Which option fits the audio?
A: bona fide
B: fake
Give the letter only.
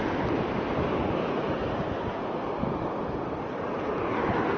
A